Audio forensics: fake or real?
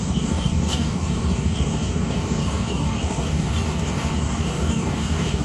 fake